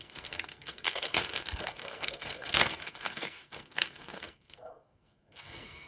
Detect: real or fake fake